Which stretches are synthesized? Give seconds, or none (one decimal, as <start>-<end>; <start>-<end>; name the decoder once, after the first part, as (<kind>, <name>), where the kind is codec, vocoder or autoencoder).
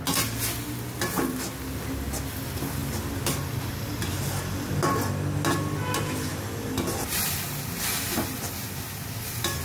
none